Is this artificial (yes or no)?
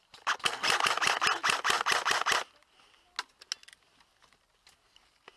no